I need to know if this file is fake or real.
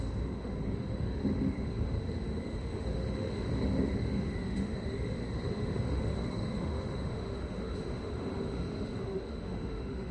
fake